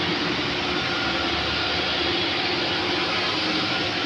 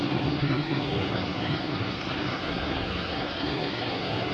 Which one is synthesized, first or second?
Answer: second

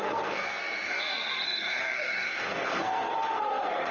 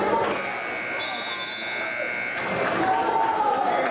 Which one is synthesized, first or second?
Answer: first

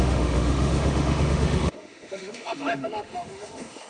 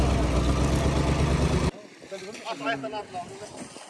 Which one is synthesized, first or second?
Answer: first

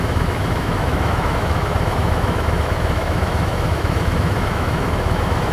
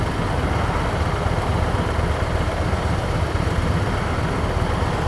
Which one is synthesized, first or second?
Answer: first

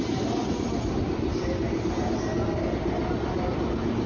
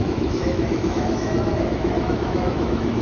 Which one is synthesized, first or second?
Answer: second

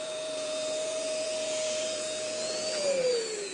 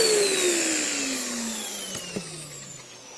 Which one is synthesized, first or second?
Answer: first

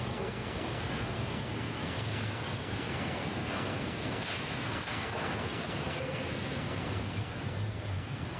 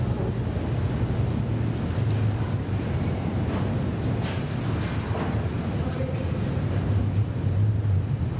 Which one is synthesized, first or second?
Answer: first